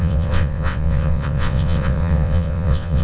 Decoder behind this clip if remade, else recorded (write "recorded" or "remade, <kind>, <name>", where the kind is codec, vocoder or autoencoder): remade, vocoder, WaveNeXt